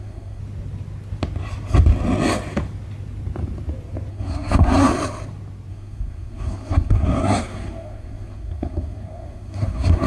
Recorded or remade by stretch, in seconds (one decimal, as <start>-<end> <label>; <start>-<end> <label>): 0.0-0.4 remade; 0.4-4.1 recorded; 4.1-4.9 remade; 4.9-5.7 recorded; 5.7-10.1 remade